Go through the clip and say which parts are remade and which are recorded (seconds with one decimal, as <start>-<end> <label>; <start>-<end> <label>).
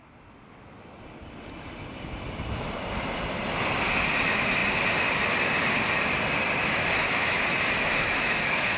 0.0-7.0 recorded; 7.0-8.8 remade